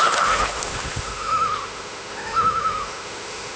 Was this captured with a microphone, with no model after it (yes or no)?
no